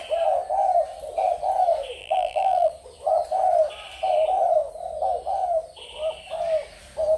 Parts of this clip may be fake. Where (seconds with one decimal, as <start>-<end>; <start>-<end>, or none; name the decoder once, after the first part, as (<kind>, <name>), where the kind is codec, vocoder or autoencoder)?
2.0-2.7 (vocoder, BigVGAN v2)